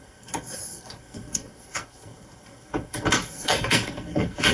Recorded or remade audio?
remade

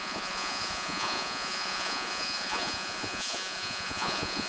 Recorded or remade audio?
remade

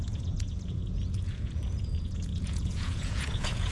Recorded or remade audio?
remade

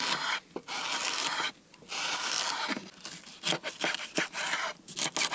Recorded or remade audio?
recorded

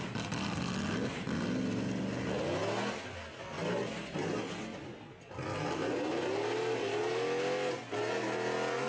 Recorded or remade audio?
recorded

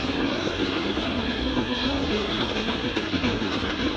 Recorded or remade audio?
remade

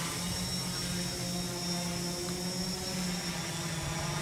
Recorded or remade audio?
recorded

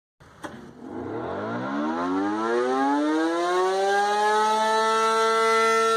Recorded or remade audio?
recorded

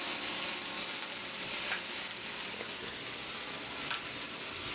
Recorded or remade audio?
recorded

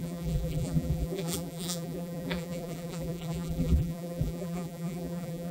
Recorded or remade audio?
remade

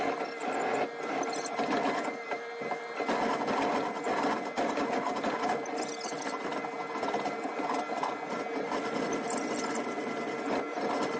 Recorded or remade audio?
recorded